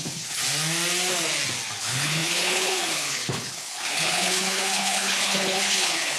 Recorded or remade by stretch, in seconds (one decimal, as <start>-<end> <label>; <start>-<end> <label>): 0.0-0.4 remade; 0.4-1.8 recorded; 1.8-6.2 remade

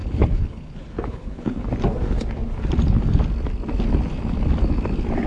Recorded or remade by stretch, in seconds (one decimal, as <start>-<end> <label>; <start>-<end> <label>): 0.0-1.7 remade; 1.7-5.3 recorded

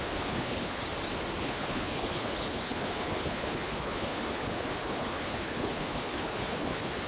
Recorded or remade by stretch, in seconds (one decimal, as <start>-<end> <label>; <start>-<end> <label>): 0.0-0.8 remade; 0.8-1.4 recorded; 1.4-7.1 remade

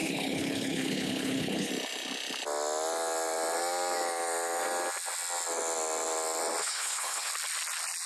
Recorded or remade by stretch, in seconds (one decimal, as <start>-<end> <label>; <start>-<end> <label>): 0.0-1.7 remade; 1.7-6.6 recorded; 6.6-7.3 remade; 7.3-8.1 recorded

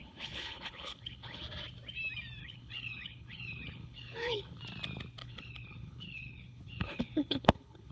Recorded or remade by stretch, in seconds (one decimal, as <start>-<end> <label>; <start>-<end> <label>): 0.0-1.4 remade; 1.4-2.4 recorded; 2.4-4.6 remade; 4.6-5.2 recorded; 5.2-7.9 remade